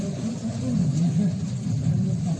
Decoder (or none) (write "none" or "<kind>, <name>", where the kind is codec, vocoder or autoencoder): none